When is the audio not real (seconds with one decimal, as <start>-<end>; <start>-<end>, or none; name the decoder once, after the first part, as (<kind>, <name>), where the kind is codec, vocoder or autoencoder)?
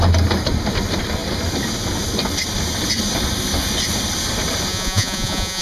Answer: 4.7-5.6 (vocoder, Vocos)